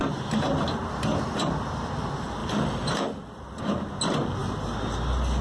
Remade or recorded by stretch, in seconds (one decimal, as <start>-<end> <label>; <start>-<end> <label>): 0.0-2.4 recorded; 2.4-3.6 remade; 3.6-5.4 recorded